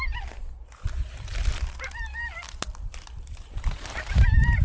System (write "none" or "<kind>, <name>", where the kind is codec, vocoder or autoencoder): none